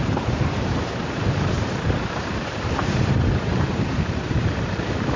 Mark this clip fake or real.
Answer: fake